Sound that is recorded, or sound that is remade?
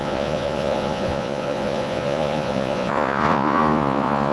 remade